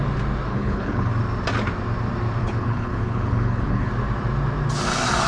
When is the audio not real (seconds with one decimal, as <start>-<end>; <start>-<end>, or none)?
0.5-1.1; 2.4-3.9